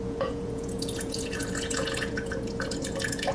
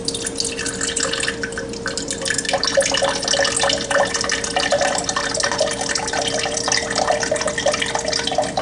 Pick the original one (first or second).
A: second